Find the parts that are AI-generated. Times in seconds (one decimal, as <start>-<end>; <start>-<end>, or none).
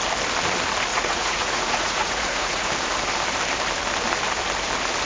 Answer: 0.9-2.7